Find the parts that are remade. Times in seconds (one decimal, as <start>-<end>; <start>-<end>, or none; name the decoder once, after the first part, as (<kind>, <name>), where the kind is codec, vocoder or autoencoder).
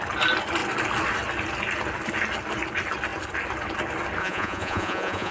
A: 4.2-5.3 (vocoder, Vocos)